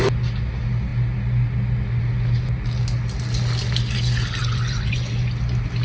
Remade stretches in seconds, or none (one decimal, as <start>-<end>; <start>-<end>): 4.4-5.3